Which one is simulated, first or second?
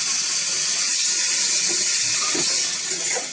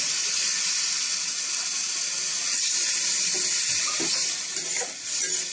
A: first